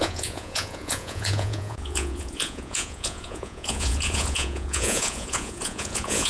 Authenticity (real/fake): fake